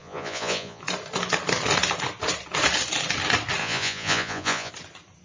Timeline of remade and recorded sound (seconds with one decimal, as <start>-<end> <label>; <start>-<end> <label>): 0.0-0.8 remade; 0.8-3.6 recorded; 3.6-4.7 remade; 4.7-5.2 recorded